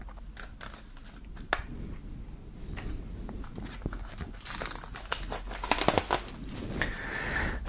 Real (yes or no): yes